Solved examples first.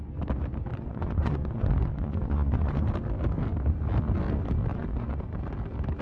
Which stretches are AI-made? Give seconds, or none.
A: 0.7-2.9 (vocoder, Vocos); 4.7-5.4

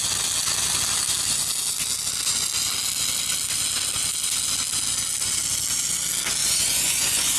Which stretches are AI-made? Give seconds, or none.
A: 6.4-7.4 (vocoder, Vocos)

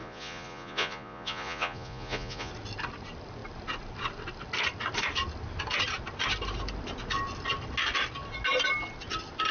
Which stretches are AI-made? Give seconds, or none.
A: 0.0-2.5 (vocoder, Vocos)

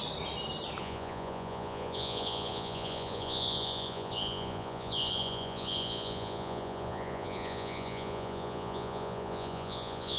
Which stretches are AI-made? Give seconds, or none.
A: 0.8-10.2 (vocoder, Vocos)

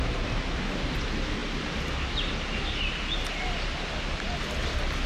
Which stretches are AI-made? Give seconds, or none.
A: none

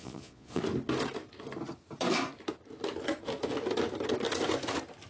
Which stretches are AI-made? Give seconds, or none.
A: 0.0-0.6 (vocoder, Vocos)

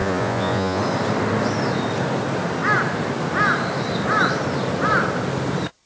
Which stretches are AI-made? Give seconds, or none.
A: 0.0-0.8 (vocoder, Vocos)